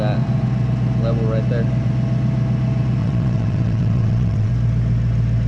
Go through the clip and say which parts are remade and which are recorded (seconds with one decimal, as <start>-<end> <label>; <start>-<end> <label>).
0.0-3.0 recorded; 3.0-4.5 remade; 4.5-5.5 recorded